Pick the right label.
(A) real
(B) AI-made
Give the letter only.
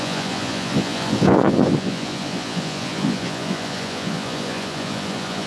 B